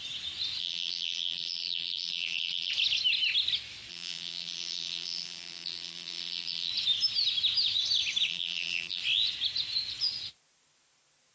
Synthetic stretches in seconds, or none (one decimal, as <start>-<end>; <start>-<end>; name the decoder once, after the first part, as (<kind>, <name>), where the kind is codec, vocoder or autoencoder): 0.6-2.7 (vocoder, BigVGAN v2); 3.9-6.7; 8.3-9.0